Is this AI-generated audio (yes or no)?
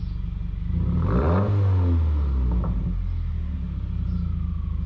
no